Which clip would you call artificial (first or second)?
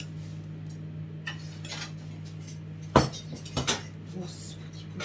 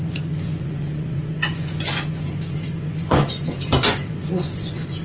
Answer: second